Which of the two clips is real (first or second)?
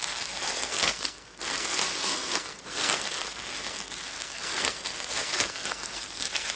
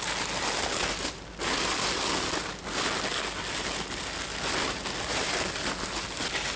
second